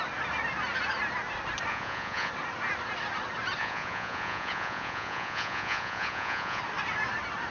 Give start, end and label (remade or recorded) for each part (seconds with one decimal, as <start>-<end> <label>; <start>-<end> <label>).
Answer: 0.0-1.7 recorded; 1.7-2.3 remade; 2.3-3.6 recorded; 3.6-6.6 remade; 6.6-7.5 recorded